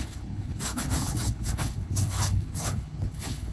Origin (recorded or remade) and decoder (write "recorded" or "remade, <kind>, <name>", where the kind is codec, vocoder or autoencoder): remade, codec, HILCodec